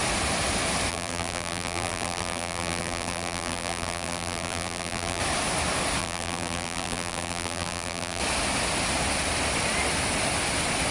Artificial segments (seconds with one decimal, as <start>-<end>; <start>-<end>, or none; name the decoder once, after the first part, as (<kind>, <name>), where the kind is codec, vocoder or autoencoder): 0.9-5.2 (vocoder, BigVGAN v2); 6.0-8.2